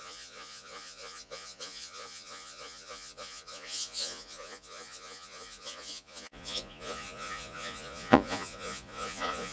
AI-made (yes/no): yes